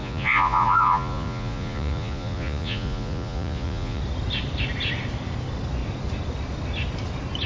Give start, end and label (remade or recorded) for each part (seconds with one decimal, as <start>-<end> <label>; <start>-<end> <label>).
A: 0.0-4.0 remade; 4.0-7.5 recorded